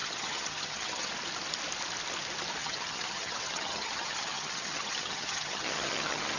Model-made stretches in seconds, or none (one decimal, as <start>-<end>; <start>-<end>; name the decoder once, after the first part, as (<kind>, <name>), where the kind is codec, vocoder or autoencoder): 0.0-1.1 (vocoder, HiFi-GAN); 2.6-6.4